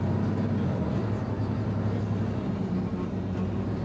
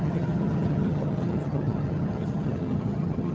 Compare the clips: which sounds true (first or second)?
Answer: first